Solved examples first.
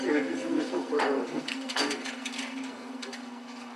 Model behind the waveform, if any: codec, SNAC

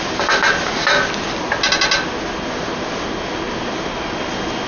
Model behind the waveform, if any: none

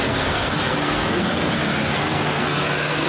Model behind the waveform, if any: codec, SNAC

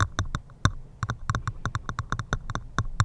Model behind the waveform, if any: none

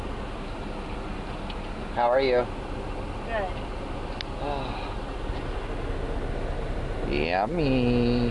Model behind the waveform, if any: none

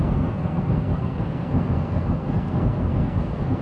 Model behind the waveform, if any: codec, SNAC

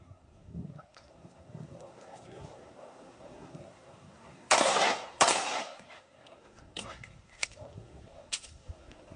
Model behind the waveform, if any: codec, SNAC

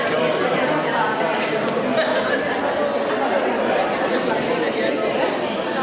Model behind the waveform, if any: none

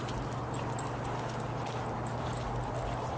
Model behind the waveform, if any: none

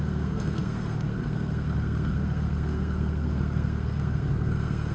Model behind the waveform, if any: codec, SNAC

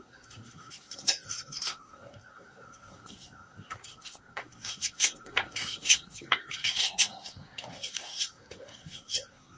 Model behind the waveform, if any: codec, SNAC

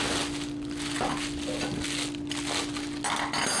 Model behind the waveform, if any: none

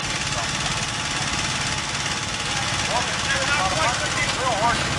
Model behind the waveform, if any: none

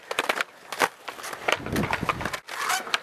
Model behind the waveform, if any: none